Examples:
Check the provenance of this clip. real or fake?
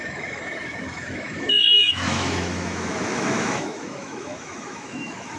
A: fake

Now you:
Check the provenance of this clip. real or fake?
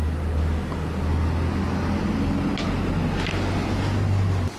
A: real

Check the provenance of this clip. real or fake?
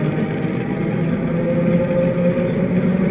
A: real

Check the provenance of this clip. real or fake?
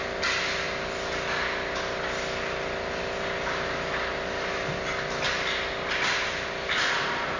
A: real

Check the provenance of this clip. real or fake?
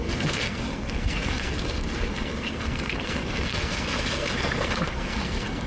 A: fake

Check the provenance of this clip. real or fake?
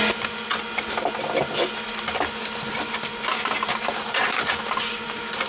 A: real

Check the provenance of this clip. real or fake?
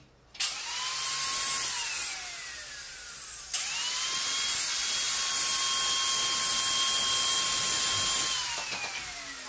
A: real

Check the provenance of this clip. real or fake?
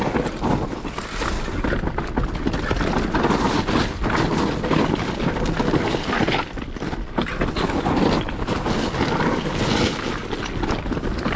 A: real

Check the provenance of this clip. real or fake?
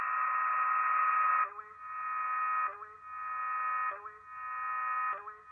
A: real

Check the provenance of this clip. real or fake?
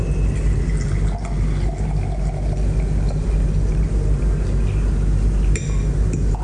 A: real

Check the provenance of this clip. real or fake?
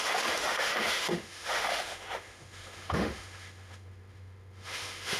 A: fake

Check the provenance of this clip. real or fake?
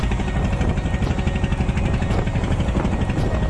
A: real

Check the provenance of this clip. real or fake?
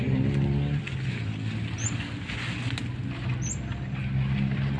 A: real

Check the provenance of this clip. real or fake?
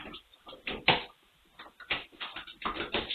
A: real